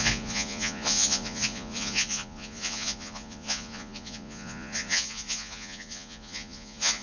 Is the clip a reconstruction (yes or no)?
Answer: yes